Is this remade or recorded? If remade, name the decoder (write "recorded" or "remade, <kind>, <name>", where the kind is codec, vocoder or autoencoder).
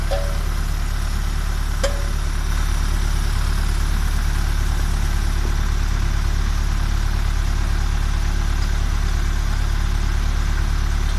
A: recorded